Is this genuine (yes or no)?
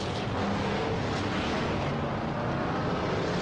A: yes